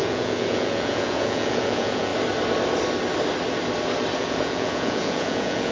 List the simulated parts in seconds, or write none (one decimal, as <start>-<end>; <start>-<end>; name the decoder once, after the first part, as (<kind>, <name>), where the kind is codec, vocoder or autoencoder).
0.0-2.1 (vocoder, Vocos); 4.2-5.7